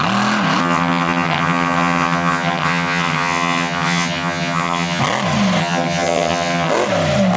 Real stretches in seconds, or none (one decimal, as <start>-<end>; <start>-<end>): 0.0-0.6; 5.0-5.6; 6.7-7.4